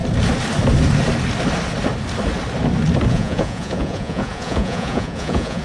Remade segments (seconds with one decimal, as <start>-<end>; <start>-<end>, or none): 3.1-5.6